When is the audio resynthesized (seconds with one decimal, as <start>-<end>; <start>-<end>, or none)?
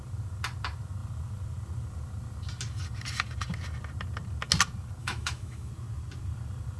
5.0-5.7